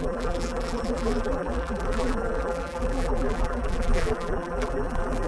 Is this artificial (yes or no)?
yes